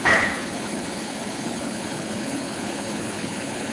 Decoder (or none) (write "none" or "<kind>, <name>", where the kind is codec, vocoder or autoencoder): codec, HILCodec